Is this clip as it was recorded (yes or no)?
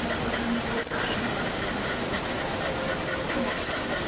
yes